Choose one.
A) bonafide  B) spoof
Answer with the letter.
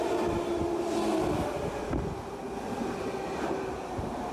A